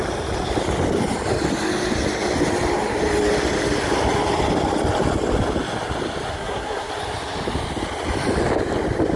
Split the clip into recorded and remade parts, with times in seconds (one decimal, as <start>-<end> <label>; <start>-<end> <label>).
0.0-6.3 recorded; 6.3-6.9 remade; 6.9-9.2 recorded